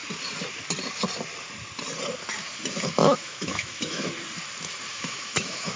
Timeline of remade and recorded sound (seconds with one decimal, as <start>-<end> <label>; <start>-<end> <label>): 0.0-3.0 recorded; 3.0-4.1 remade; 4.1-4.9 recorded; 4.9-5.8 remade